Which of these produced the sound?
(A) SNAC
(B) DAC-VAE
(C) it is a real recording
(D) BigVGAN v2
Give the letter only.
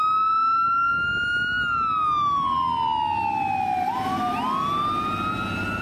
C